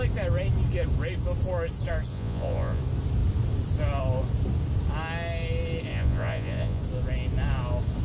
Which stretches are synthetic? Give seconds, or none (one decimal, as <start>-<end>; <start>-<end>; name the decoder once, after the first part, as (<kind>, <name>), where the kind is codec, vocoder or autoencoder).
2.1-2.8 (vocoder, Vocos); 5.9-6.8